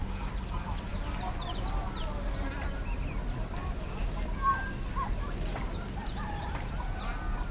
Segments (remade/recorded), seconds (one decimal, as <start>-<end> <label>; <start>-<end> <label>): 0.0-7.5 recorded